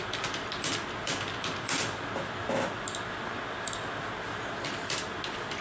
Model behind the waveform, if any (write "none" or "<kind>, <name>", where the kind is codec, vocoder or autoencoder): none